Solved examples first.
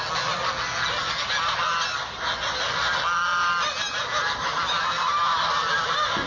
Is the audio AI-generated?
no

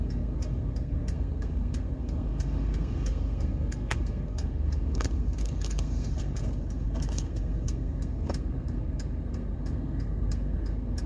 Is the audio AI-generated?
yes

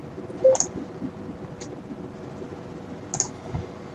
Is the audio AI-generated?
no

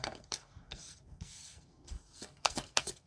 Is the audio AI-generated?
yes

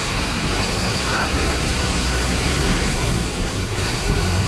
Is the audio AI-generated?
yes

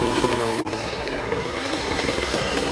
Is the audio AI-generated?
yes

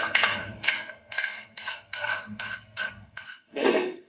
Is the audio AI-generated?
yes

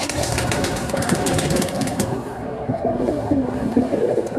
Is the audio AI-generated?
yes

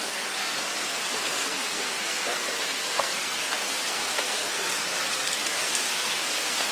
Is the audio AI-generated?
yes